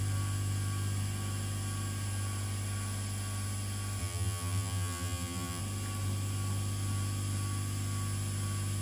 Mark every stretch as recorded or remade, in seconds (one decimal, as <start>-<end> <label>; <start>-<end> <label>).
0.0-4.0 recorded; 4.0-5.6 remade; 5.6-8.8 recorded